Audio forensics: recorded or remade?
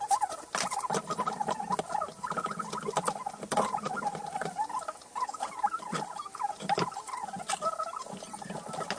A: recorded